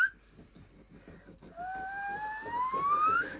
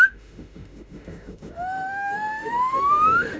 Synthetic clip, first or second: second